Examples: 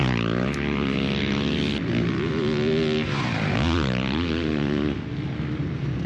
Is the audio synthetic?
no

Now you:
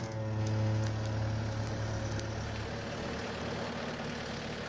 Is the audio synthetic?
no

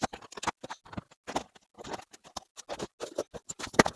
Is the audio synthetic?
no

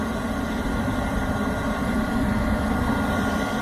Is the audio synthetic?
no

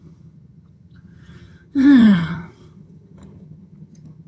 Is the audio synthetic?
yes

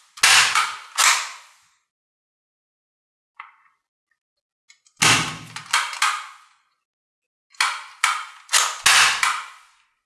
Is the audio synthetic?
no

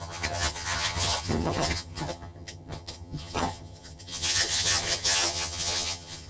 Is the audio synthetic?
yes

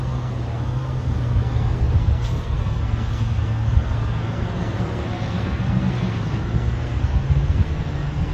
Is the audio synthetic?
yes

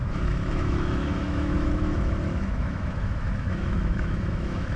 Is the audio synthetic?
yes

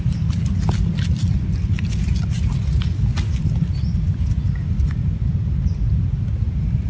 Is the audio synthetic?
no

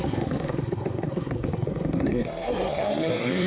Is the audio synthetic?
yes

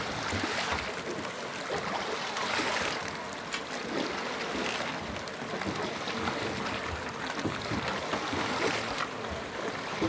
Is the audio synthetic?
no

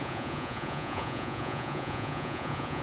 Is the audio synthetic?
yes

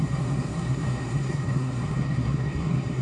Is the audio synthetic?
yes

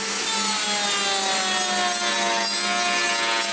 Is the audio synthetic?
no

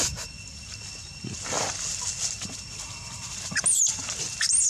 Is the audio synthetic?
no